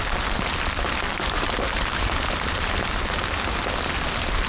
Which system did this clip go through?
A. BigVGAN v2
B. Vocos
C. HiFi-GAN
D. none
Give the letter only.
D